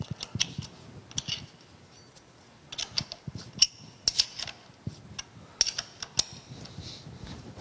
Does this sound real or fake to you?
real